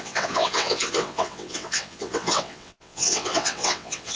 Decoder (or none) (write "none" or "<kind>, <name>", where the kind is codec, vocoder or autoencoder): vocoder, WaveNeXt